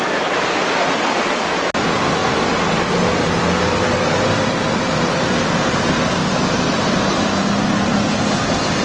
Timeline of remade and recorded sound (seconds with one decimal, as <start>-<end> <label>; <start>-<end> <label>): 0.0-8.8 recorded